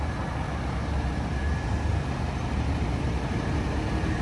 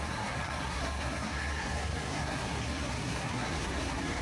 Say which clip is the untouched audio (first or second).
first